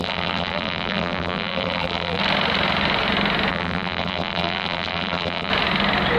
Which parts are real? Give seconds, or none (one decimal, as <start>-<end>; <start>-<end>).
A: 2.2-3.5; 5.5-6.2